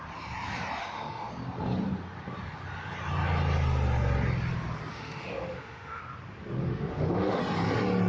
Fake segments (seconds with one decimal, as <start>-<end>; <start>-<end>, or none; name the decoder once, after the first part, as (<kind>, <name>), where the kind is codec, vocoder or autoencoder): 0.8-1.3 (autoencoder, DAC-VAE); 4.9-6.0; 6.6-7.4